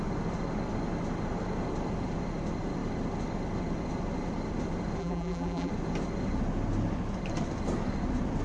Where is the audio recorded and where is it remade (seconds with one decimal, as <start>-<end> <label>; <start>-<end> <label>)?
0.0-5.0 recorded; 5.0-5.7 remade; 5.7-8.4 recorded